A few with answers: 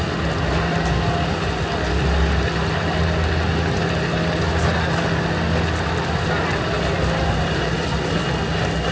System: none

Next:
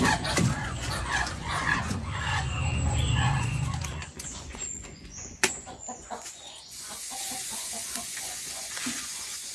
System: vocoder, Vocos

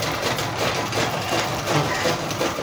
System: none